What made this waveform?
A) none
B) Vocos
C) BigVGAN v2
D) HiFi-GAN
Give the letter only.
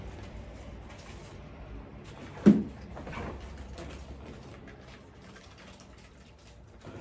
C